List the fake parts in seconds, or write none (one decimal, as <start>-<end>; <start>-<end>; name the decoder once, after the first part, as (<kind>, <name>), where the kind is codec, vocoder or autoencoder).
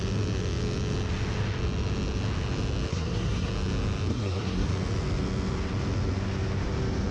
2.9-3.5 (codec, SNAC); 4.1-4.7